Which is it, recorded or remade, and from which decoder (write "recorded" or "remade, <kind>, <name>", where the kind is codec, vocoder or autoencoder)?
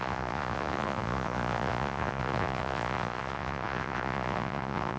remade, vocoder, Vocos